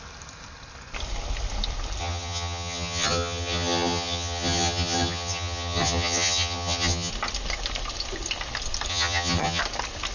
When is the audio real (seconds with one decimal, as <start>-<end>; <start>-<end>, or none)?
0.0-2.0; 7.1-8.9; 9.6-10.1